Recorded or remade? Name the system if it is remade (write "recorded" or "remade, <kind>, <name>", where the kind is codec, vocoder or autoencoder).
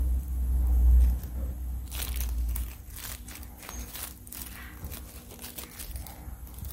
recorded